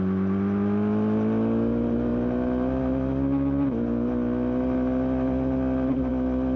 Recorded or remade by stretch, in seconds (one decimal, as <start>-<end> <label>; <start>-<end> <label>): 0.0-6.6 recorded